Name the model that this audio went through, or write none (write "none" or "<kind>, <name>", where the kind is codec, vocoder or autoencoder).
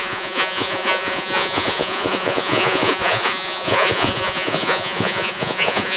vocoder, Vocos